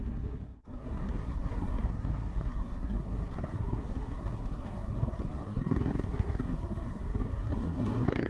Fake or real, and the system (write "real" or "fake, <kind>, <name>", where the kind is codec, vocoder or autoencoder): fake, codec, SNAC